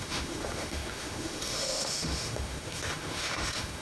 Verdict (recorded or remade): remade